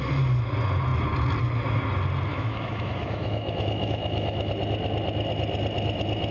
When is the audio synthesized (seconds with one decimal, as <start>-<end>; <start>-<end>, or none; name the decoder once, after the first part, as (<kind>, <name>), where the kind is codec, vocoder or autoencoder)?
2.3-4.5 (autoencoder, DAC-VAE)